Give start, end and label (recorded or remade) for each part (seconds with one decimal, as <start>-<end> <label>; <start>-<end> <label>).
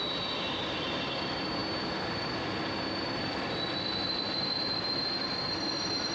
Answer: 0.0-1.6 remade; 1.6-5.3 recorded; 5.3-6.1 remade